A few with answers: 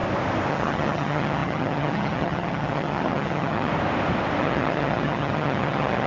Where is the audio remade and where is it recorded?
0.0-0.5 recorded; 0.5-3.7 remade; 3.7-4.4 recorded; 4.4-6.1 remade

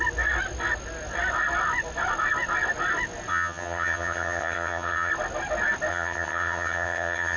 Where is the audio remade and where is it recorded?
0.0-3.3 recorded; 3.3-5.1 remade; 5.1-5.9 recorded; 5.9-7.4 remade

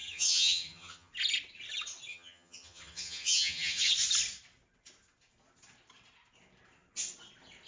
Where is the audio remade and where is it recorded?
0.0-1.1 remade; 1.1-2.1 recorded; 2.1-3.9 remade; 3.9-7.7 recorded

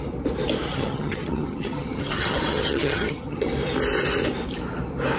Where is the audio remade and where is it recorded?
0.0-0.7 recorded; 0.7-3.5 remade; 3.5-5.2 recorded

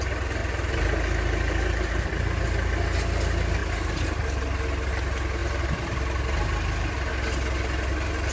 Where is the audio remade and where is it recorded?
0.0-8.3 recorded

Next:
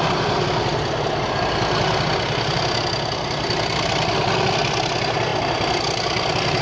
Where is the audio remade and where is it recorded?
0.0-6.6 recorded

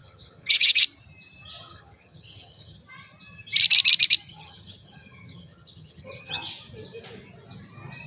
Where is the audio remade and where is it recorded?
0.0-0.8 remade; 0.8-1.6 recorded; 1.6-2.8 remade; 2.8-4.3 recorded; 4.3-6.4 remade; 6.4-8.1 recorded

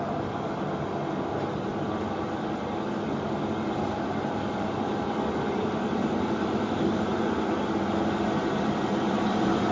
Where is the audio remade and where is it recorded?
0.0-9.7 recorded